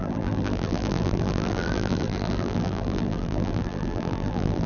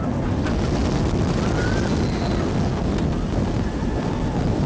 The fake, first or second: first